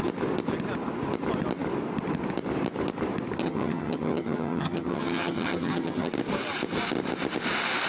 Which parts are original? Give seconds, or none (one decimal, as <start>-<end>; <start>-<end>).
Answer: 0.0-3.4; 6.1-7.9